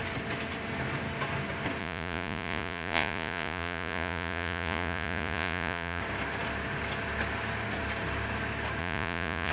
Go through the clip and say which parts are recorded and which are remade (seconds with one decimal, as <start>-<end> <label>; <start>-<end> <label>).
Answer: 0.0-1.8 recorded; 1.8-6.0 remade; 6.0-8.8 recorded; 8.8-9.5 remade